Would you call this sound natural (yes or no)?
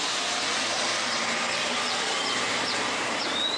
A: yes